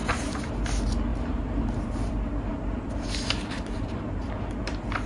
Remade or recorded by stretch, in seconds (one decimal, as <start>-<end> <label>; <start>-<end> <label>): 0.0-0.5 remade; 0.5-1.1 recorded; 1.1-2.1 remade; 2.1-2.5 recorded; 2.5-4.6 remade; 4.6-5.1 recorded